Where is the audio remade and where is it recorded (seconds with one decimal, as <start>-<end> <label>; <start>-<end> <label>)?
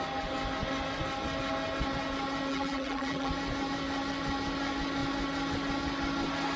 0.0-2.5 recorded; 2.5-3.3 remade; 3.3-6.6 recorded